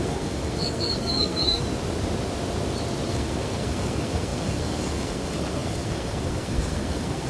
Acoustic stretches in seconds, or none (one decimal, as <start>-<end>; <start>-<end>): 1.6-3.1

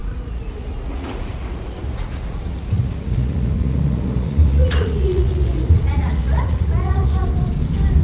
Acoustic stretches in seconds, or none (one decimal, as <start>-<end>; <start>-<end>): 7.2-8.0